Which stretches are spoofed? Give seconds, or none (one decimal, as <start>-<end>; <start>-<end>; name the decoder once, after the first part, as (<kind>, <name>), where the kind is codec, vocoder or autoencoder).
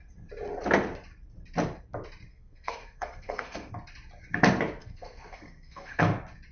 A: 2.3-3.7 (codec, SNAC); 4.8-6.0